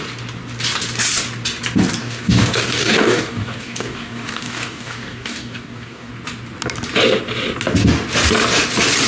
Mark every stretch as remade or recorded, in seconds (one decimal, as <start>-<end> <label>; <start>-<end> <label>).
0.0-2.0 recorded; 2.0-6.1 remade; 6.1-9.1 recorded